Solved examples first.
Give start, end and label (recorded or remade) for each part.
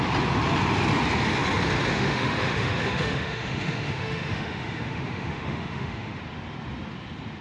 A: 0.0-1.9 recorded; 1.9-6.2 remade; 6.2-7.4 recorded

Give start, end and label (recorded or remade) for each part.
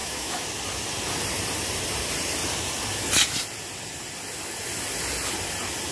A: 0.0-0.5 remade; 0.5-5.9 recorded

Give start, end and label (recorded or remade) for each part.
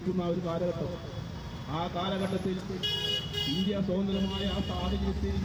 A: 0.0-5.4 recorded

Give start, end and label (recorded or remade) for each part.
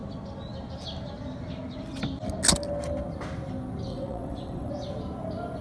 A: 0.0-3.9 recorded; 3.9-4.7 remade; 4.7-5.6 recorded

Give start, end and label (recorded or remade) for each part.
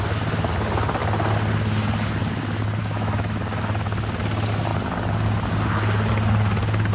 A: 0.0-2.8 recorded; 2.8-3.4 remade; 3.4-6.9 recorded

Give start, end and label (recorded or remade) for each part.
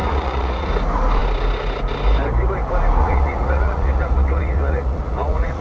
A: 0.0-0.7 remade; 0.7-3.0 recorded; 3.0-5.6 remade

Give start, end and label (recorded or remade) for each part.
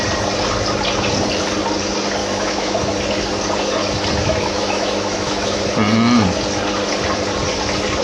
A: 0.0-2.2 recorded; 2.2-2.8 remade; 2.8-4.2 recorded; 4.2-5.6 remade; 5.6-8.0 recorded